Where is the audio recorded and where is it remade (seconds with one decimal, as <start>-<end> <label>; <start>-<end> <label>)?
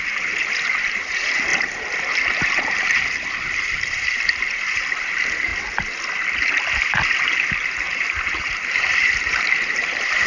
0.0-5.5 remade; 5.5-7.5 recorded; 7.5-10.3 remade